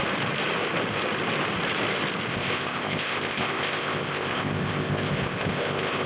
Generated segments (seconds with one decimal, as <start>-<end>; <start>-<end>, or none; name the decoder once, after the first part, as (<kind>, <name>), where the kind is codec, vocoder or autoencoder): 2.3-6.1 (codec, ZipCodec)